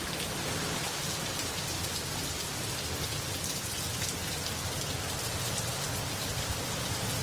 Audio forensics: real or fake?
real